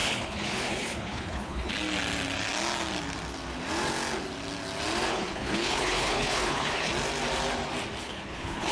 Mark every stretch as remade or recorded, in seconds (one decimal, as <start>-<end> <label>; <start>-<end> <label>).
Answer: 0.0-1.7 remade; 1.7-5.1 recorded; 5.1-6.9 remade; 6.9-8.0 recorded; 8.0-8.7 remade